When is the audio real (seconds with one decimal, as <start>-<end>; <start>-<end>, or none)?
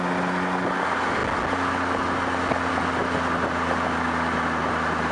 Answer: 0.0-5.1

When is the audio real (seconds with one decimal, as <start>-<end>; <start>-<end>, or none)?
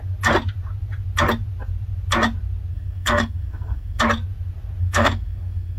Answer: 0.0-2.7; 4.0-4.8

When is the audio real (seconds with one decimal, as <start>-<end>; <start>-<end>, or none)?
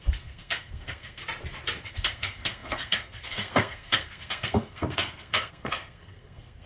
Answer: 1.2-1.9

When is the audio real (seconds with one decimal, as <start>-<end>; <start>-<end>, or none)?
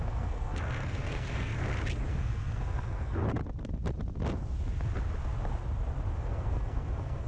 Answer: 1.5-2.1; 3.2-6.1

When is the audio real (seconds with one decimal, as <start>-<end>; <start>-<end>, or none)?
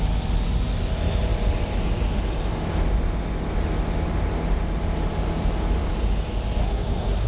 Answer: 0.0-6.6